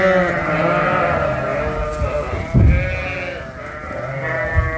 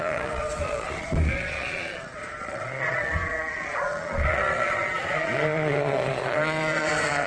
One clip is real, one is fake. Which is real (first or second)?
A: first